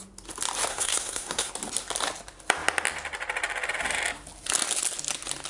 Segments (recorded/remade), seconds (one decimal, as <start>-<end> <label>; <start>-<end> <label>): 0.0-0.7 recorded; 0.7-1.5 remade; 1.5-5.5 recorded